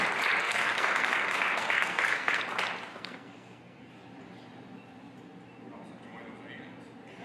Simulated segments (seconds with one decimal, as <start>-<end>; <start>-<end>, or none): 0.4-2.4; 2.9-3.9